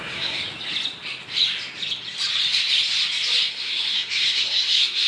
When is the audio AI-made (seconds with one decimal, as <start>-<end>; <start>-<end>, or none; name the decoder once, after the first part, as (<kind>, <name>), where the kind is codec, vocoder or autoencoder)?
0.0-0.4 (codec, SNAC); 3.5-5.1